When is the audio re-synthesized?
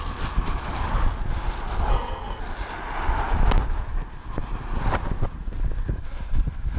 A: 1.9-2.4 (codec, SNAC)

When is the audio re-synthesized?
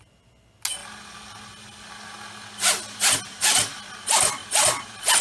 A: none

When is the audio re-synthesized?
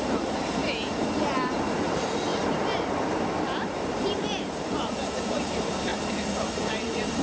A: 0.0-0.6 (vocoder, BigVGAN v2); 1.6-2.3; 2.9-5.9; 6.7-7.2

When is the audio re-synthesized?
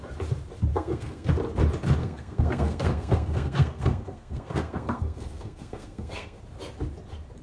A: 0.7-1.3 (codec, SNAC); 2.0-6.4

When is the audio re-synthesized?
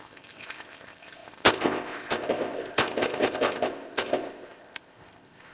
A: 0.0-5.5 (codec, ZipCodec)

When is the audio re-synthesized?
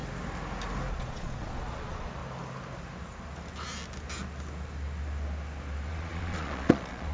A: 0.9-2.2 (vocoder, Vocos); 5.9-7.1